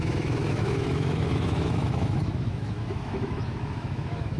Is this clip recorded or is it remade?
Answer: remade